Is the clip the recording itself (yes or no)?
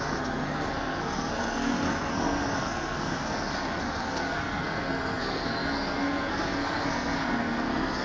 no